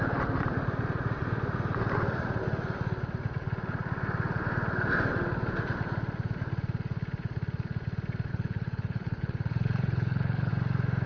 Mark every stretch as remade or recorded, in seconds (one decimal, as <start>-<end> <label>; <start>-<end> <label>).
0.0-8.3 recorded; 8.3-10.5 remade; 10.5-11.1 recorded